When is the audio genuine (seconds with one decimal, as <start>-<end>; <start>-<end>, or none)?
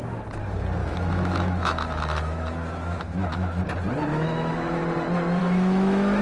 0.0-0.8; 3.6-4.1; 4.8-5.4